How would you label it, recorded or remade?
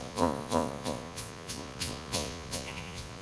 remade